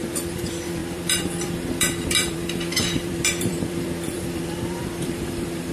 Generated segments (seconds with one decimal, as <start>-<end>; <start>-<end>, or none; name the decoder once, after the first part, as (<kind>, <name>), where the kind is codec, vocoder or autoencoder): 0.0-5.7 (vocoder, BigVGAN v2)